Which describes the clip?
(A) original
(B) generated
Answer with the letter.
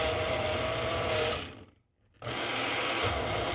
A